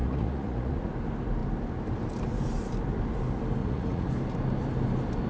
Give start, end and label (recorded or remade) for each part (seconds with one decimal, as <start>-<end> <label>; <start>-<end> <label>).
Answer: 0.0-0.9 remade; 0.9-3.6 recorded; 3.6-4.1 remade; 4.1-5.3 recorded